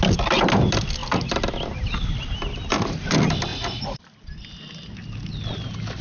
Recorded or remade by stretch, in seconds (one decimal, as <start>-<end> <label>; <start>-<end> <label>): 0.0-3.5 recorded; 3.5-4.0 remade; 4.0-6.0 recorded